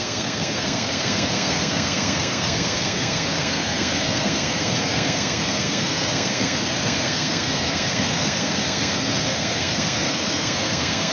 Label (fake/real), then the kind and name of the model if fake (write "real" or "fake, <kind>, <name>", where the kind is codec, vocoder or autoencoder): fake, codec, SNAC